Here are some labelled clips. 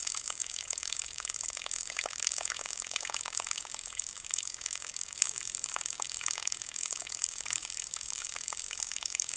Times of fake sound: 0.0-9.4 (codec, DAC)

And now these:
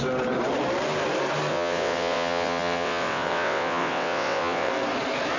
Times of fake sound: 1.5-4.7 (vocoder, WaveNeXt)

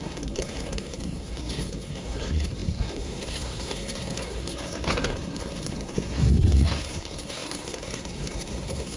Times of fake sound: 0.0-9.0 (codec, SNAC)

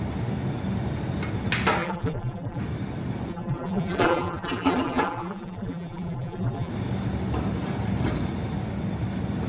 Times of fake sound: 1.8-2.6 (vocoder, BigVGAN v2); 3.3-6.7